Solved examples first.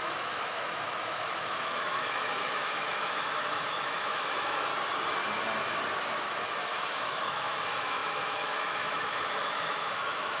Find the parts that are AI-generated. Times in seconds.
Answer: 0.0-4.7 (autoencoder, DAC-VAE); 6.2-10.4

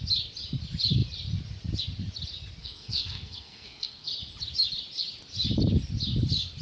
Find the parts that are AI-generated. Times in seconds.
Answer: 2.6-4.1 (codec, SNAC)

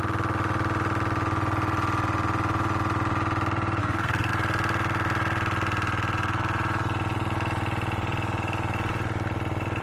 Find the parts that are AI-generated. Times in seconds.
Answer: 3.8-4.3 (codec, SNAC)

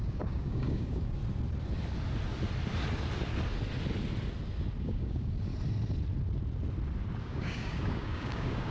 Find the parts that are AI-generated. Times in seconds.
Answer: 0.0-1.2 (codec, DAC); 4.8-5.5; 7.2-8.7

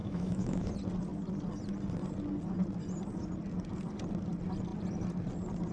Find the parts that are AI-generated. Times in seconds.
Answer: 0.0-0.7 (autoencoder, DAC-VAE)